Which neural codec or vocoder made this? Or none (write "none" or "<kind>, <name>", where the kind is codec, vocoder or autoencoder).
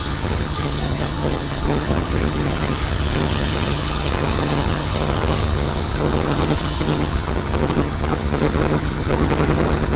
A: vocoder, HiFi-GAN